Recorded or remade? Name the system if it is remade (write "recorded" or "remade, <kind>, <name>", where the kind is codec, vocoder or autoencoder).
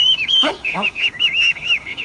remade, autoencoder, DAC-VAE